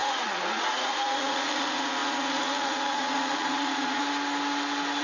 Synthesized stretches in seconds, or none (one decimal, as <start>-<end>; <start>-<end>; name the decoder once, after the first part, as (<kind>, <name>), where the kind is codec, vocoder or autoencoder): 0.0-4.0 (vocoder, Vocos)